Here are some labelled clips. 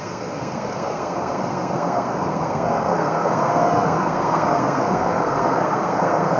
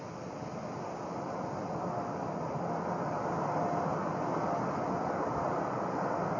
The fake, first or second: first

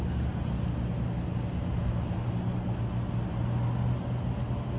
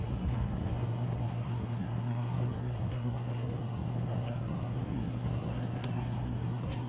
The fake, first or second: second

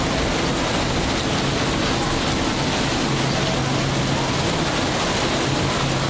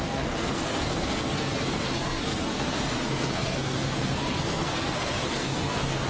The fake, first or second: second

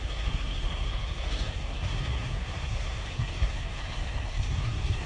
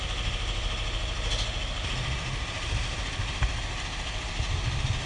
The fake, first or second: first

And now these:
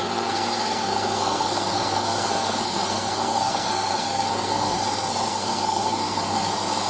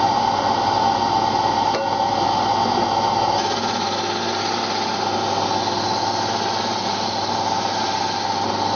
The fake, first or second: first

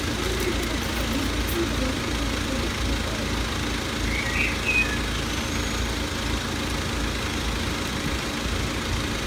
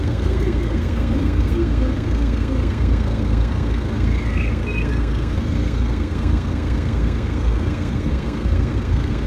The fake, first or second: second